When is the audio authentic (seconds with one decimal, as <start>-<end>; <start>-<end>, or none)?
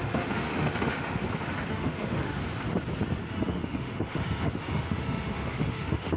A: 1.2-1.7; 2.4-3.2